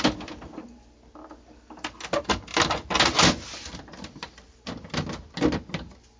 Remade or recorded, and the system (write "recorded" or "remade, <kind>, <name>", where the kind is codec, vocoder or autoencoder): recorded